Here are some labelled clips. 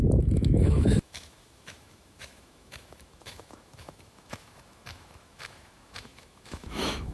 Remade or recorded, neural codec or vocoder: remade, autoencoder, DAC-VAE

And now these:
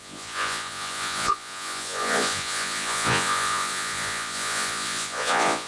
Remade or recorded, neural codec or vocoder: remade, vocoder, Vocos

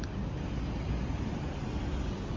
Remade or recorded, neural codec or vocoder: recorded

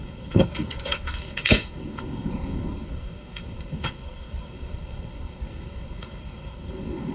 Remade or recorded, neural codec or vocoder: remade, codec, SNAC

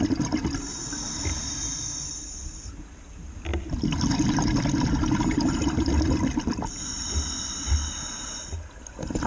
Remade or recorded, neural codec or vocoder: recorded